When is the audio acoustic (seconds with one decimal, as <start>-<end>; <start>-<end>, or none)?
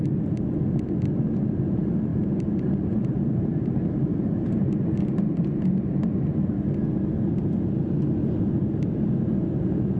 0.0-2.1; 5.7-10.0